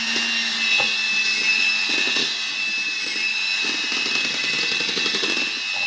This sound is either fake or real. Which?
real